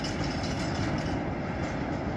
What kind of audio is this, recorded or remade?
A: recorded